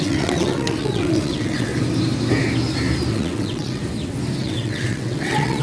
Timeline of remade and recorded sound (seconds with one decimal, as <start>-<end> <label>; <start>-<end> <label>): 0.0-1.7 remade; 1.7-3.1 recorded; 3.1-3.8 remade; 3.8-4.4 recorded; 4.4-5.6 remade